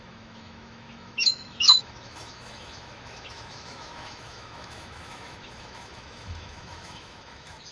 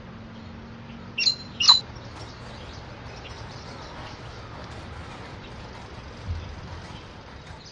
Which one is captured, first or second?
second